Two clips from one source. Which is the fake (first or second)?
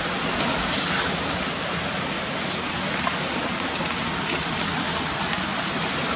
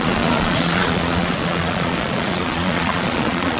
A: second